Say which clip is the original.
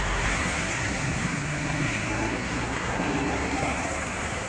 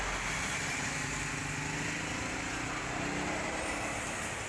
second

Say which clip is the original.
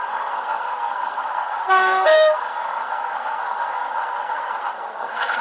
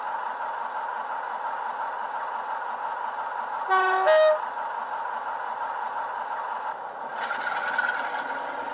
second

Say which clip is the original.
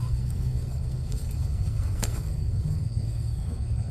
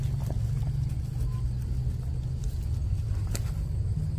second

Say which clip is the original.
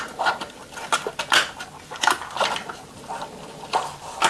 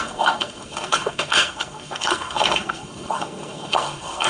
first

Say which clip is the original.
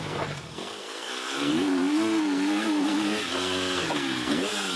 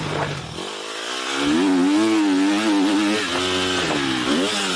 second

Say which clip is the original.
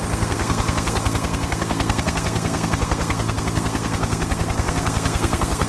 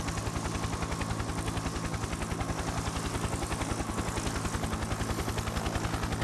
second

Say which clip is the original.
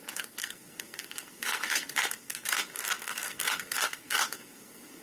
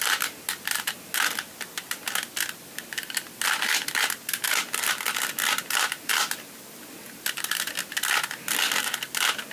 second